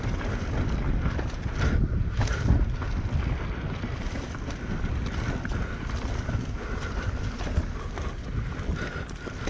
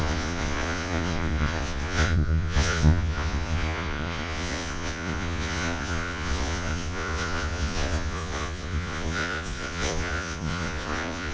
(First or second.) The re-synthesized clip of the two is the second